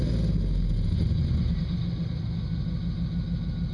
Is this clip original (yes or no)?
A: yes